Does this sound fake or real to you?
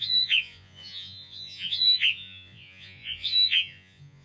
fake